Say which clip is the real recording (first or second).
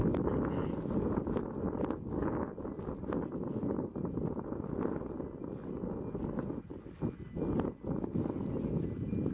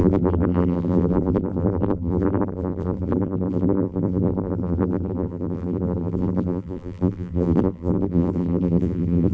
first